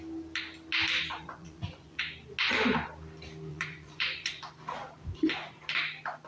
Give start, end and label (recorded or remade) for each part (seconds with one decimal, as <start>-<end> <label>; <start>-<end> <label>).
0.0-1.1 recorded; 1.1-2.0 remade; 2.0-3.5 recorded; 3.5-4.4 remade; 4.4-6.3 recorded